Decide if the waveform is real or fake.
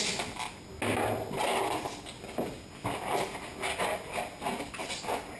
real